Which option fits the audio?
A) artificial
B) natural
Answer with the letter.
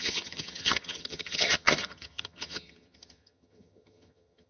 A